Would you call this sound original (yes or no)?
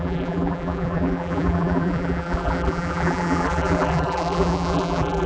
no